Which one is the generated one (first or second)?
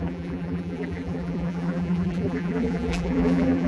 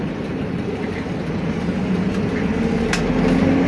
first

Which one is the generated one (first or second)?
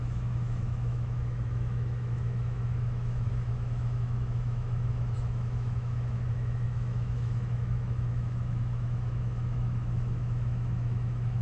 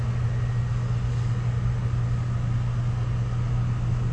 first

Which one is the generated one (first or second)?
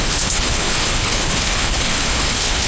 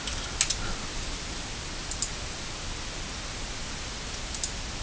first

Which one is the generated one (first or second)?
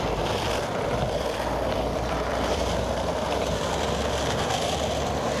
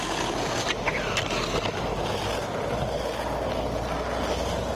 first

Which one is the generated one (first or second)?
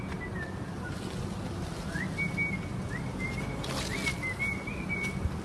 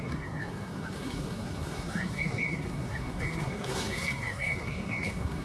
second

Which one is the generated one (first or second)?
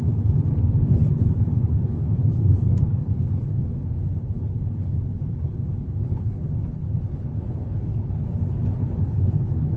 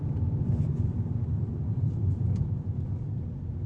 first